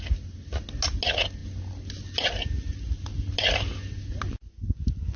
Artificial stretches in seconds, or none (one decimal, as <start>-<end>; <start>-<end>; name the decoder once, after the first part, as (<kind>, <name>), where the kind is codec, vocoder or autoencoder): none